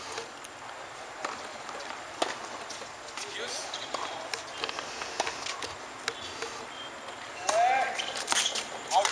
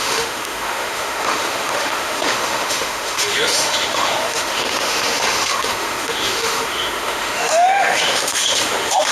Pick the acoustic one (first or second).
first